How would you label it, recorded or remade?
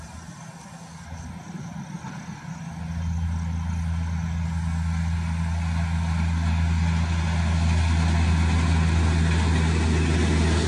recorded